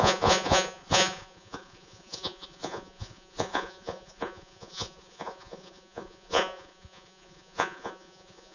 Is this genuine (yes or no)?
no